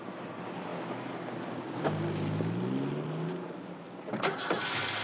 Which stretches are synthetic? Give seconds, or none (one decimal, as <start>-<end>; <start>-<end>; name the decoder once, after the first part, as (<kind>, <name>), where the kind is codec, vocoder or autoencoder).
none